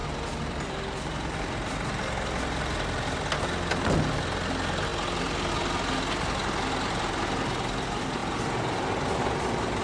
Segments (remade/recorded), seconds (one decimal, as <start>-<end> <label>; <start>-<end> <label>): 0.0-2.4 remade; 2.4-9.8 recorded